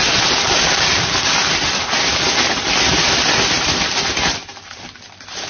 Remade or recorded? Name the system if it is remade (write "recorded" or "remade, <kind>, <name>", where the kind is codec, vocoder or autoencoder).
recorded